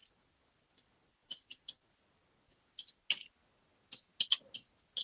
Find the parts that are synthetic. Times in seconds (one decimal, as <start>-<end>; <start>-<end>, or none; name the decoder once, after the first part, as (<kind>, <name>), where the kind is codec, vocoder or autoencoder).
0.0-3.0 (vocoder, BigVGAN v2)